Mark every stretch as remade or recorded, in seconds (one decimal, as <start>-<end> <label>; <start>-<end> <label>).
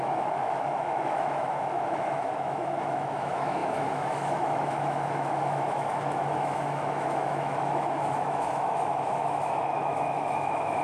0.0-10.8 remade